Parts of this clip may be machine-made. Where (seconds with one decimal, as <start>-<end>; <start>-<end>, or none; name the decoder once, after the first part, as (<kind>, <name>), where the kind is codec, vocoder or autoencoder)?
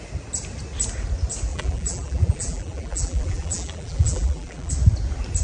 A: 1.5-4.7 (vocoder, BigVGAN v2)